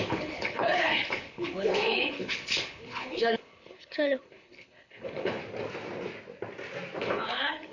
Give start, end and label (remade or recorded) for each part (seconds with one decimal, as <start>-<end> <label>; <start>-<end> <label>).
0.0-5.4 remade; 5.4-7.0 recorded; 7.0-7.7 remade